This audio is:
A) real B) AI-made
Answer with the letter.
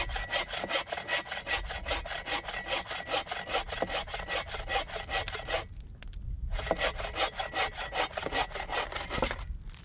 A